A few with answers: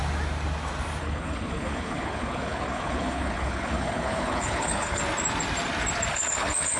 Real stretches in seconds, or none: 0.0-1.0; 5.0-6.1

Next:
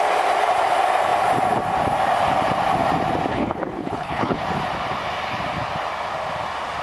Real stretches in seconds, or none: 0.0-3.3; 4.4-6.8

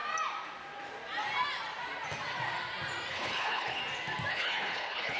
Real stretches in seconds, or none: 0.0-3.1; 3.8-4.3

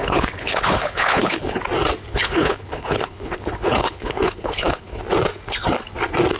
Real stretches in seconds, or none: 1.6-2.1; 5.0-6.4

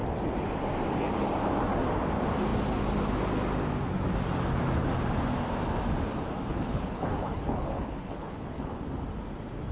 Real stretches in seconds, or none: 0.0-6.5; 8.7-9.7